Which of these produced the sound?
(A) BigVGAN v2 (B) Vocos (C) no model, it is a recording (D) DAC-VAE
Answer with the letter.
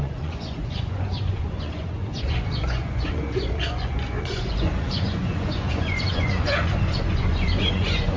B